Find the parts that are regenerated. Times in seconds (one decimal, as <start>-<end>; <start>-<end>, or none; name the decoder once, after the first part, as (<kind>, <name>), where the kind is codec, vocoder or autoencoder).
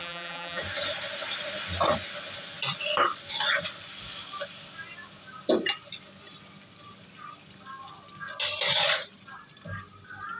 0.0-0.6 (vocoder, BigVGAN v2)